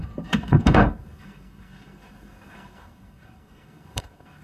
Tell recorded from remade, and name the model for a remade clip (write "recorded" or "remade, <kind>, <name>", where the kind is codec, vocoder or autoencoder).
remade, codec, SNAC